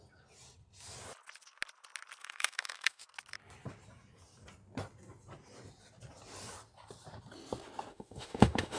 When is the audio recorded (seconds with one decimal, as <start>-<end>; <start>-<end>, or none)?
0.0-2.2; 3.0-7.9